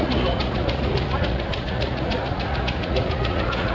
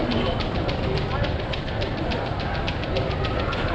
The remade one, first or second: first